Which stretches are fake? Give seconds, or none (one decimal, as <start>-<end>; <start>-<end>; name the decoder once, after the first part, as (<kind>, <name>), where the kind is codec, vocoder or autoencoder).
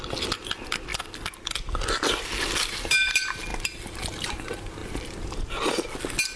4.8-5.5 (vocoder, BigVGAN v2)